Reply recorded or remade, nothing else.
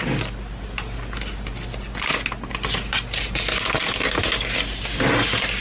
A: recorded